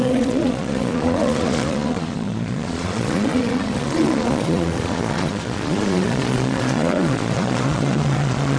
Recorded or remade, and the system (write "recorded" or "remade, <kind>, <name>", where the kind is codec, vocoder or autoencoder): remade, vocoder, Vocos